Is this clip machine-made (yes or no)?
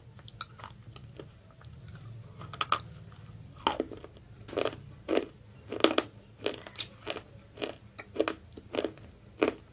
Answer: no